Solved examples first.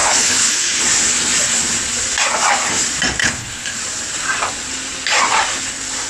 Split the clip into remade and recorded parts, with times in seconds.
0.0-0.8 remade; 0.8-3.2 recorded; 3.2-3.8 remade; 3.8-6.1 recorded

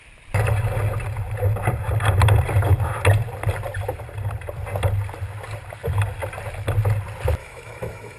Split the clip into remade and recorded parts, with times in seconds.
0.0-7.4 recorded; 7.4-8.2 remade

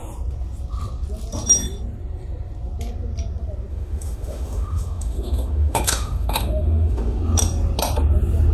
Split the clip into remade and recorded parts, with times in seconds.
0.0-3.7 recorded; 3.7-7.2 remade; 7.2-8.5 recorded